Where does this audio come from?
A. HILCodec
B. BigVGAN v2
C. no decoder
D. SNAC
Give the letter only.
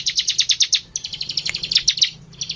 C